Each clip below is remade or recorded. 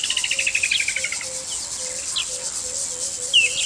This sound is recorded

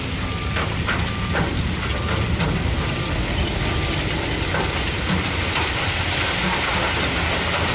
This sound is recorded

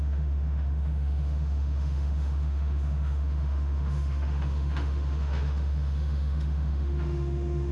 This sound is remade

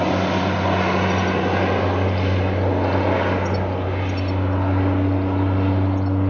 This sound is recorded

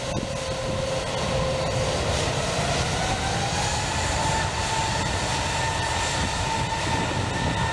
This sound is recorded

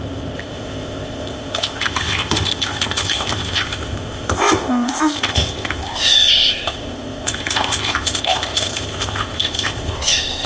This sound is remade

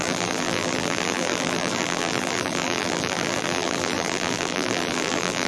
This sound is remade